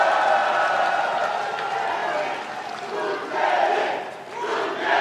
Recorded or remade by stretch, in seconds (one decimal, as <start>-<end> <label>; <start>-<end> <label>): 0.0-5.0 recorded